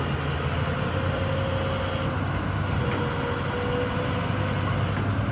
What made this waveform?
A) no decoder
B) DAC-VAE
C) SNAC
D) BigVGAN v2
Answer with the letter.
A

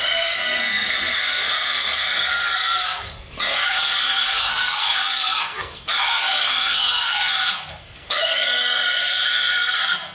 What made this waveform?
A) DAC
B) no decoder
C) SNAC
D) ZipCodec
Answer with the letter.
C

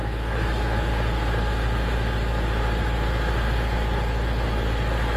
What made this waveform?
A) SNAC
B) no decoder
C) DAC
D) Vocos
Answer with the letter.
B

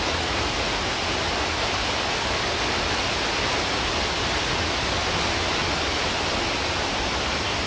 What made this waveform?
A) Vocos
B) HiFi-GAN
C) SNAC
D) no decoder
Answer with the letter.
D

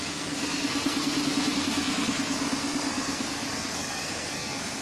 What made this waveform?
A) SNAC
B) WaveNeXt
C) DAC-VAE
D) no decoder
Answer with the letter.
A